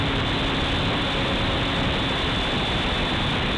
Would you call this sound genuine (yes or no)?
yes